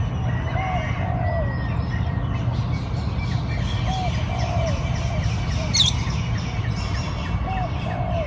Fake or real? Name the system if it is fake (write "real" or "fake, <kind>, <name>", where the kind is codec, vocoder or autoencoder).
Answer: real